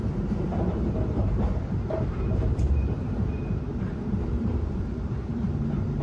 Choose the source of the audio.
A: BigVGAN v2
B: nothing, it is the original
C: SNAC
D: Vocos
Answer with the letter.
A